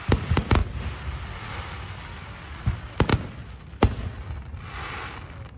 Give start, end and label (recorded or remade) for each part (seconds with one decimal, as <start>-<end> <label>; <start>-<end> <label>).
0.0-5.6 recorded